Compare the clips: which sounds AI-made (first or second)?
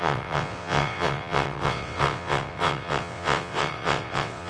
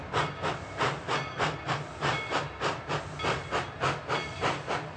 first